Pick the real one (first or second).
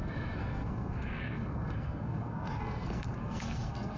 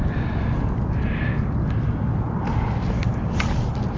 second